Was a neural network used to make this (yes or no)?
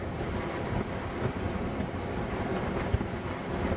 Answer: yes